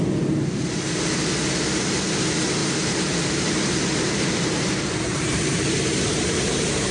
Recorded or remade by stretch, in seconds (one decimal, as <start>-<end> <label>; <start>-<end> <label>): 0.0-2.6 recorded; 2.6-6.9 remade